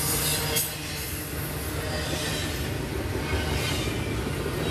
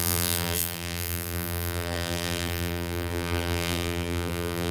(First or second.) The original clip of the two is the first